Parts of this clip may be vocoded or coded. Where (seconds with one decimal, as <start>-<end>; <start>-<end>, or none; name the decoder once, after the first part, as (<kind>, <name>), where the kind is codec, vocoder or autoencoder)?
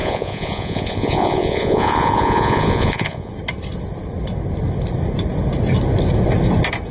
0.0-3.3 (vocoder, Vocos)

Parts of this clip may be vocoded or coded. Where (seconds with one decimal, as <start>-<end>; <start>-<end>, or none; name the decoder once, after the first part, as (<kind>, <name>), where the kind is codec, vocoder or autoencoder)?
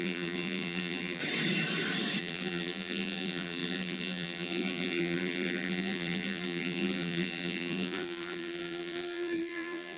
0.0-1.2 (vocoder, BigVGAN v2); 2.2-10.0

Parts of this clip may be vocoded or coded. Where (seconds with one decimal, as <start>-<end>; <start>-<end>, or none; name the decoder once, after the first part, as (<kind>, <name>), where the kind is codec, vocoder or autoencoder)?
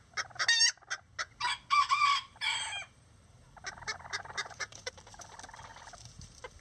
1.8-5.0 (vocoder, BigVGAN v2); 5.7-6.6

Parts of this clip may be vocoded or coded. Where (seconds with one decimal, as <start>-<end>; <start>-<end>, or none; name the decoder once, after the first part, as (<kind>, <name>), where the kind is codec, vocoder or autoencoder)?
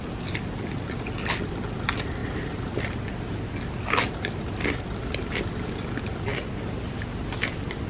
2.2-5.4 (vocoder, BigVGAN v2); 6.3-6.8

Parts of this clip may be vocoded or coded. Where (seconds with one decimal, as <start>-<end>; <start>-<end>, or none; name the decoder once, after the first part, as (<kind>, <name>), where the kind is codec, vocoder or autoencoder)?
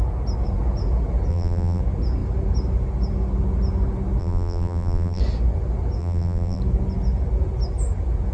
1.3-1.8 (vocoder, BigVGAN v2); 4.2-5.2; 6.0-6.6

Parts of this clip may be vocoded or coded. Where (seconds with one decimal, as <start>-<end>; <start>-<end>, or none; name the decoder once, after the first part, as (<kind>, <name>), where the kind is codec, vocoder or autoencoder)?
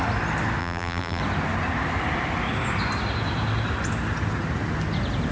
0.6-1.2 (vocoder, BigVGAN v2)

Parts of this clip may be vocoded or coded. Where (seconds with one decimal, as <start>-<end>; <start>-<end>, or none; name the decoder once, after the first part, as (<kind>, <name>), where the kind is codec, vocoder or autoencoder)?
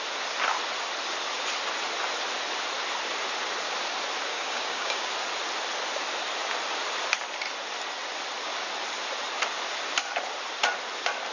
4.3-5.1 (codec, DAC)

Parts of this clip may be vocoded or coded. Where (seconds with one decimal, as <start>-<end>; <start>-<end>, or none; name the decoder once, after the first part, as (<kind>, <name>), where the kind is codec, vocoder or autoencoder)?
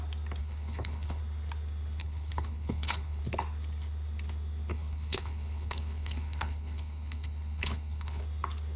0.4-1.2 (codec, HILCodec); 2.0-3.2; 4.7-8.2